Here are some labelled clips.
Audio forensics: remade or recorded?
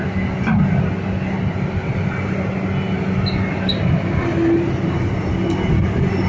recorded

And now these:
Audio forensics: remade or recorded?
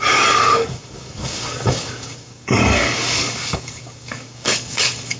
remade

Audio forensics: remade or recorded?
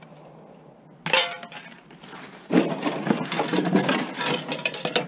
recorded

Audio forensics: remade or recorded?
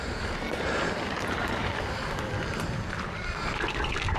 recorded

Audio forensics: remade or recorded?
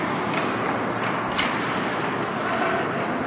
recorded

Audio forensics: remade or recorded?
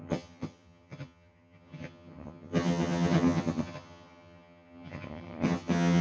remade